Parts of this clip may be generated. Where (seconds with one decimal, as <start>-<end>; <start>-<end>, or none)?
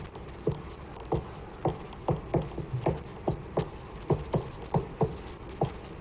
none